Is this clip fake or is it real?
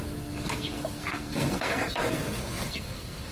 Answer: fake